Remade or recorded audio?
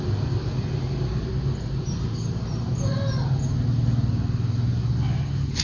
recorded